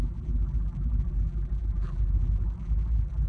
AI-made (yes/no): yes